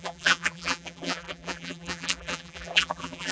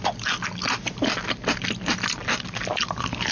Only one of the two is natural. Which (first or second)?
second